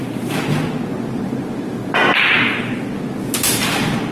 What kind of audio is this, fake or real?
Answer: real